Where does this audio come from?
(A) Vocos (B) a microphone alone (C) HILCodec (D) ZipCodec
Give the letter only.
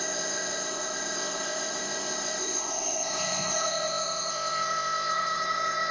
D